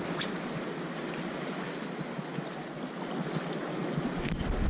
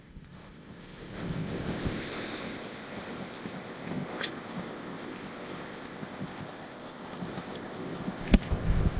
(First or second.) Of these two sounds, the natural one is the first